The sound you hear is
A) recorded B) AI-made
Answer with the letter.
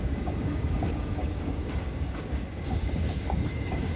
B